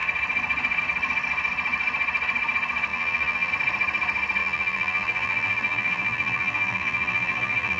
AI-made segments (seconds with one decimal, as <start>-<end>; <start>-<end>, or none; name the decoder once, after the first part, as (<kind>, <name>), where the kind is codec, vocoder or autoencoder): 2.9-3.5 (vocoder, BigVGAN v2); 4.4-7.8